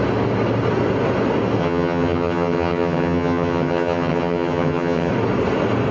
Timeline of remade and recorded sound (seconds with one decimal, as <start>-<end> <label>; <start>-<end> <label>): 0.0-1.6 recorded; 1.6-5.1 remade; 5.1-5.9 recorded